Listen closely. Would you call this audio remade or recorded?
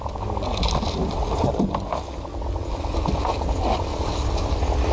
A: recorded